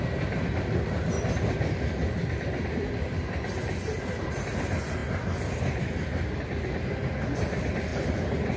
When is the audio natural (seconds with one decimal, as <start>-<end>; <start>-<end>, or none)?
0.0-8.6